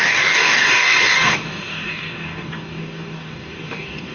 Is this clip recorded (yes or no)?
no